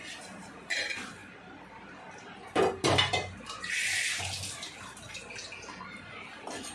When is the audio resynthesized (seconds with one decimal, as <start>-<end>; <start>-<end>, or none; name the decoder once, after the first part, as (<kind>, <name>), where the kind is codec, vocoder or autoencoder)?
none